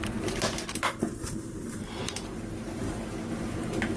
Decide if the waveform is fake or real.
real